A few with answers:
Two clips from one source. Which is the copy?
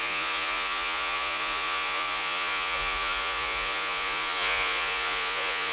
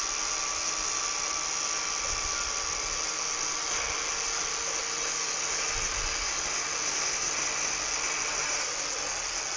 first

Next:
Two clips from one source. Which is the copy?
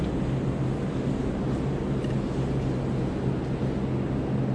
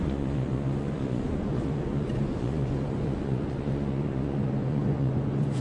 second